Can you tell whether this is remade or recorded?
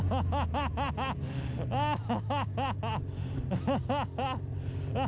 recorded